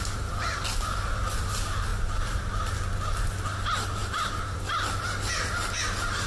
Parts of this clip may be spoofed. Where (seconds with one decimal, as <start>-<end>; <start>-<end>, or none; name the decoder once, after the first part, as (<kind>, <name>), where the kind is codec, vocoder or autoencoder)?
1.9-2.4 (vocoder, BigVGAN v2)

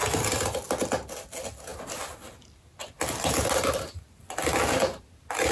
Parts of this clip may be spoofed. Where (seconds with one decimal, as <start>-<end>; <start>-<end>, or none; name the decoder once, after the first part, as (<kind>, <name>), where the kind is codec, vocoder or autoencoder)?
none